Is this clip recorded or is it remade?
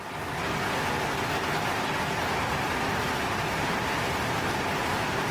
recorded